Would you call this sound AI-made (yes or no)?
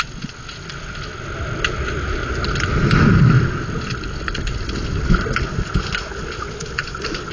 no